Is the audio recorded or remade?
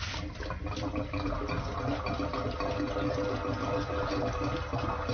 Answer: recorded